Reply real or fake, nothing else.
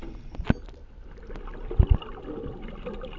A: real